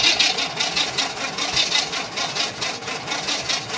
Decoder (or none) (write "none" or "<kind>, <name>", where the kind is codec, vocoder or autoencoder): none